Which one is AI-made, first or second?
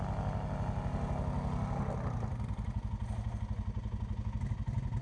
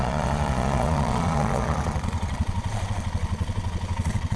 second